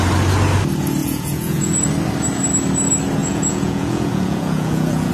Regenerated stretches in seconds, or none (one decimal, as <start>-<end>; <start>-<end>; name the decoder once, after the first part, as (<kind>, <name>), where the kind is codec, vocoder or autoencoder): 1.0-1.9 (vocoder, Vocos); 3.2-5.1